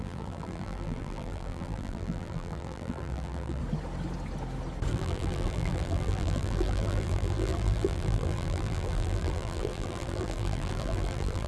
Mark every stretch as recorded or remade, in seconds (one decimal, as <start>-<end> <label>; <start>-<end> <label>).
0.0-3.6 remade; 3.6-4.9 recorded; 4.9-11.5 remade